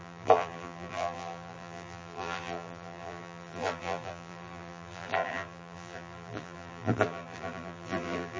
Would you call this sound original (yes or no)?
no